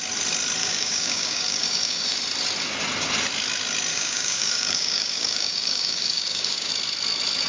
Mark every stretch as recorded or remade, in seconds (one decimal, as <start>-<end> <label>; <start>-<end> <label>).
0.0-0.6 recorded; 0.6-2.2 remade; 2.2-3.9 recorded; 3.9-6.7 remade; 6.7-7.5 recorded